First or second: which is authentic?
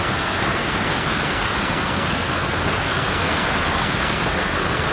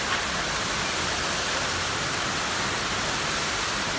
second